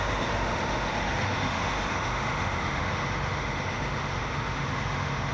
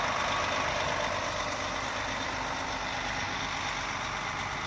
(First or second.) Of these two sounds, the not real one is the first